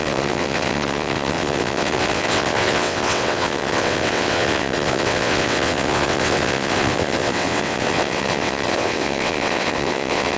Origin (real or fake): fake